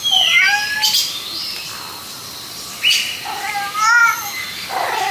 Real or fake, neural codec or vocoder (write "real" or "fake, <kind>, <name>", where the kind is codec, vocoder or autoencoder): real